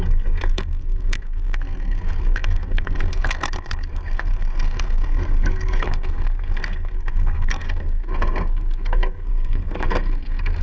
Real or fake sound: fake